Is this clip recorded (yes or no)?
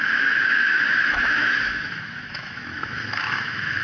no